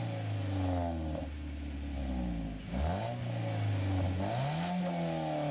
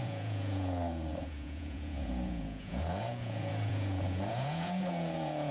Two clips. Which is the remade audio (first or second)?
second